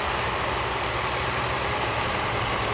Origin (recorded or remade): recorded